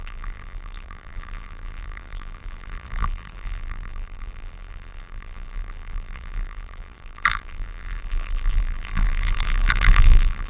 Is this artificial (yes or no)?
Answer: yes